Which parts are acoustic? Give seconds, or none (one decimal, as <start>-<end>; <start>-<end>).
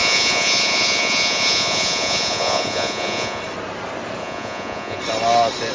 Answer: 3.4-4.2; 5.0-5.7